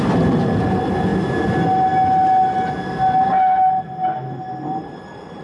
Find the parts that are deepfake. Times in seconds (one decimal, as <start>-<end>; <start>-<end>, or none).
none